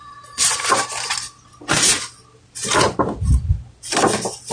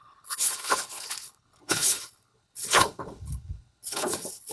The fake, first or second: second